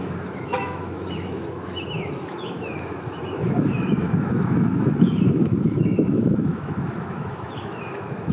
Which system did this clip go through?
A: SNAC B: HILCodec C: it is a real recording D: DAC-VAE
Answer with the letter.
D